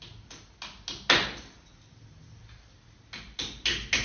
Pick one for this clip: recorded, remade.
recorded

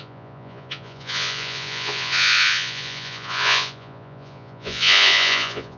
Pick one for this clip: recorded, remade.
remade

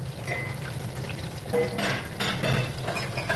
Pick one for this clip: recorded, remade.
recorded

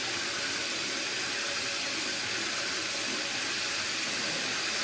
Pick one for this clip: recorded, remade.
recorded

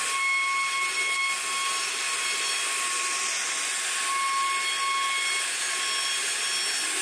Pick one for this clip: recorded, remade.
recorded